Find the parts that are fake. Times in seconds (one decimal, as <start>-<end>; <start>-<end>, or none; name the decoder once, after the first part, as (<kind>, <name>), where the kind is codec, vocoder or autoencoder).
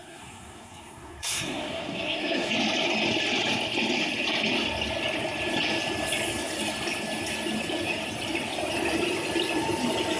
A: 0.0-2.5 (codec, SNAC)